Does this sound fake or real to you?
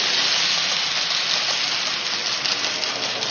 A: real